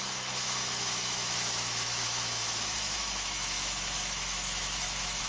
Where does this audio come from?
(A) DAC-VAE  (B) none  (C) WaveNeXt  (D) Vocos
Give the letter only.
A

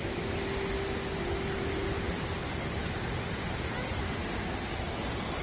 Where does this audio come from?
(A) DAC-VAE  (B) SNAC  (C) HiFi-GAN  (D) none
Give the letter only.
D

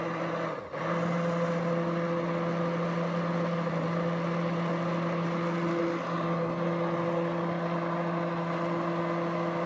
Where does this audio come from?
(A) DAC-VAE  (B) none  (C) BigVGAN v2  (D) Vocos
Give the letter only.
B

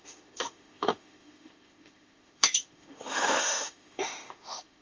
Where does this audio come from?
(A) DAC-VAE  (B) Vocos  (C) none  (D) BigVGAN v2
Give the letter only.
A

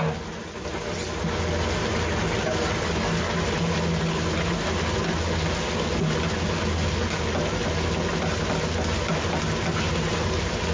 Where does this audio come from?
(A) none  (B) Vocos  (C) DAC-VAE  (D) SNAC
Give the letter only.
A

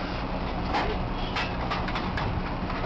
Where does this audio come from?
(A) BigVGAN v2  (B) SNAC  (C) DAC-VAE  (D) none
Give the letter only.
D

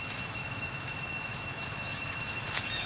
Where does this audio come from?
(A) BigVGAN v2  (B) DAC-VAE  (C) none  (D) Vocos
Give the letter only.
B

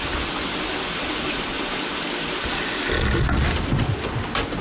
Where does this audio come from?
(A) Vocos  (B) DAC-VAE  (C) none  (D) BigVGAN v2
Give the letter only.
C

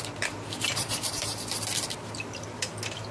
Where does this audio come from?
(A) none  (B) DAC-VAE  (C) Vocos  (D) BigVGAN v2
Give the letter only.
A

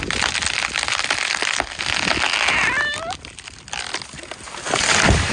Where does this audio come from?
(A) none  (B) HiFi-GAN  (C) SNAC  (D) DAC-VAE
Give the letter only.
A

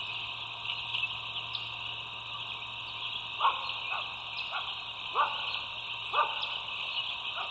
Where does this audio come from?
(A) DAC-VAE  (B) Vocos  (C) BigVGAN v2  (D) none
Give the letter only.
D